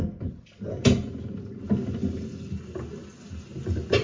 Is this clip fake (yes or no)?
no